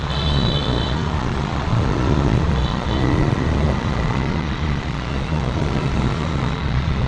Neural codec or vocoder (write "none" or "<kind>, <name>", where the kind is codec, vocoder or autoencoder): vocoder, Vocos